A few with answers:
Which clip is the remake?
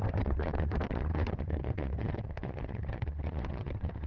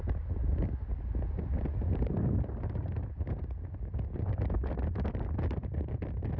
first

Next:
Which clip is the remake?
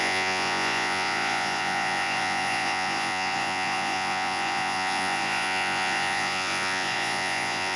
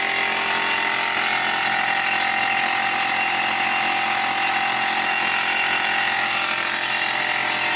first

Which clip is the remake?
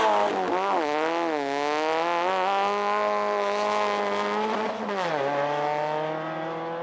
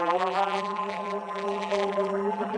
second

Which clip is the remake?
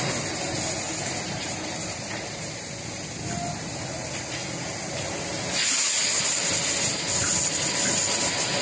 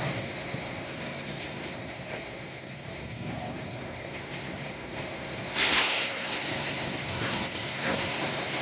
second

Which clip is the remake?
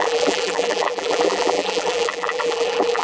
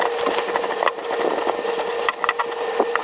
first